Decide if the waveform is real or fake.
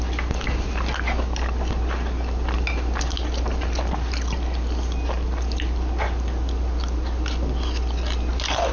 real